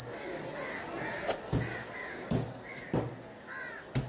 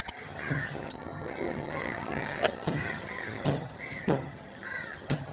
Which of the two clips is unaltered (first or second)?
first